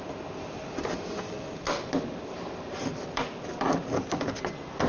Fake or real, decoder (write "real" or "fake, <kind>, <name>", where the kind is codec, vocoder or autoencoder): real